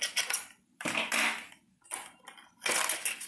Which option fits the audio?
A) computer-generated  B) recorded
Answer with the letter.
B